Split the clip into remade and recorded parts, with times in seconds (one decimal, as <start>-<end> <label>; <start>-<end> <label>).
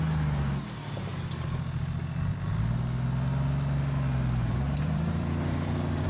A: 0.0-4.4 recorded; 4.4-6.1 remade